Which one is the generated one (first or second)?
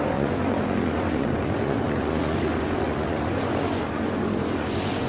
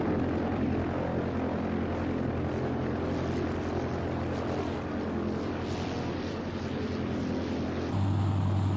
first